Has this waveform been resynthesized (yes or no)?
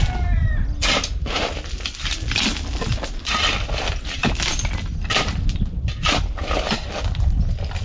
no